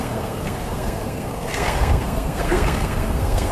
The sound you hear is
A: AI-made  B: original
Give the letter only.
A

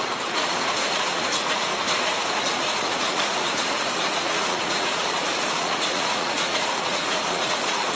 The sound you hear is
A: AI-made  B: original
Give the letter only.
A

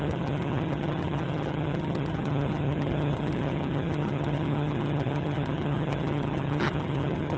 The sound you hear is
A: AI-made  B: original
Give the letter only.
A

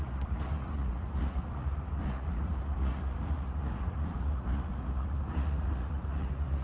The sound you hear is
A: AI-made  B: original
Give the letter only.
A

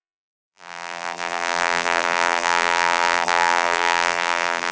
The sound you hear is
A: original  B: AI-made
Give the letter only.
B